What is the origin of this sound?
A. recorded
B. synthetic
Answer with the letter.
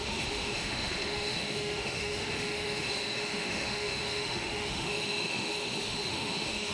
B